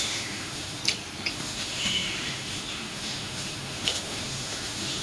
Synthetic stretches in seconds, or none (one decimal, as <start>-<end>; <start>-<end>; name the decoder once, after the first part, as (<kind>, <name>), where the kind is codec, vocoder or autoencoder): 0.0-0.8 (autoencoder, DAC-VAE); 1.3-5.0